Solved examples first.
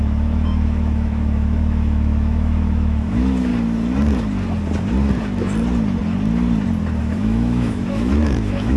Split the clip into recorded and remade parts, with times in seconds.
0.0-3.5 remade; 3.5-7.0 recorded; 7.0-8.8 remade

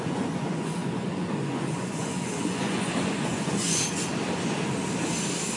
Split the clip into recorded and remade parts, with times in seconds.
0.0-4.1 remade; 4.1-5.6 recorded

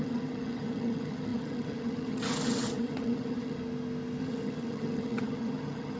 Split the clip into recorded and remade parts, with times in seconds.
0.0-3.6 remade; 3.6-4.2 recorded; 4.2-6.0 remade

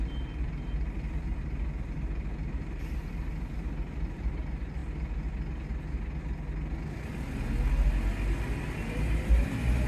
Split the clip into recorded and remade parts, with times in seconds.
0.0-4.8 remade; 4.8-9.0 recorded; 9.0-9.9 remade

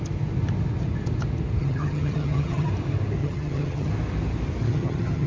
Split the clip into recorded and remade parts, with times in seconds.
0.0-1.6 recorded; 1.6-2.7 remade; 2.7-3.2 recorded; 3.2-3.9 remade; 3.9-4.6 recorded; 4.6-5.3 remade

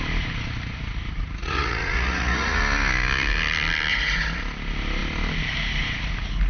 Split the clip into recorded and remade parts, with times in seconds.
0.0-1.4 recorded; 1.4-2.6 remade; 2.6-3.9 recorded; 3.9-4.4 remade; 4.4-6.5 recorded